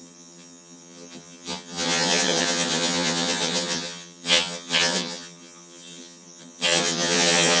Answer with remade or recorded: remade